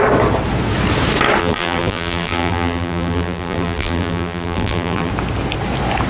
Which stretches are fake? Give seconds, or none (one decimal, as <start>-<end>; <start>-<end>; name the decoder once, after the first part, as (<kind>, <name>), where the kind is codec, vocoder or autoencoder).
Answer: 1.4-5.1 (vocoder, BigVGAN v2)